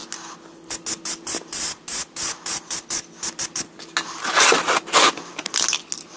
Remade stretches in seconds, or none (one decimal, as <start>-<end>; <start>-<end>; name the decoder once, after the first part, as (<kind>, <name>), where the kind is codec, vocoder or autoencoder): none